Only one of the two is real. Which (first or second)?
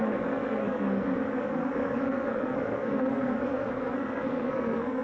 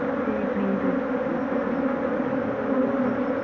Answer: second